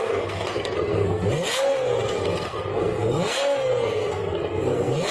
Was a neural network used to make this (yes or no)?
yes